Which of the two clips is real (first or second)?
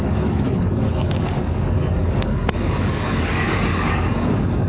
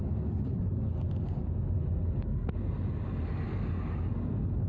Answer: second